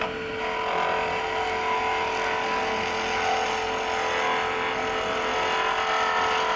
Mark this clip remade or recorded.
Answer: recorded